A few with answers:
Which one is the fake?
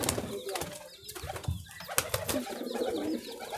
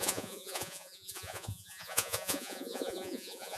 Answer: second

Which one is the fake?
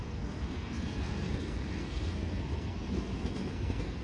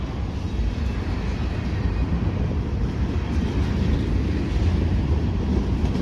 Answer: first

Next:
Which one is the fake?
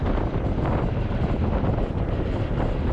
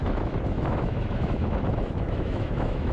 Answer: second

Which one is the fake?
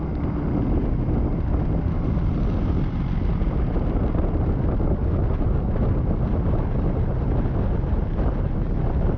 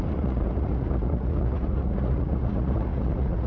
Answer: second